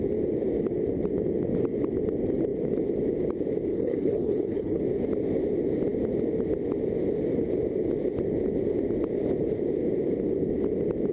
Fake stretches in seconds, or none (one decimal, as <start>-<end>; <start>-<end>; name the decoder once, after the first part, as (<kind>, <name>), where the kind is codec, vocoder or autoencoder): 3.7-4.8 (codec, HILCodec)